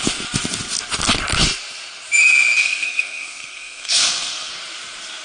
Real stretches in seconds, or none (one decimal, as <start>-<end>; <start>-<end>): 0.0-2.6; 4.5-5.2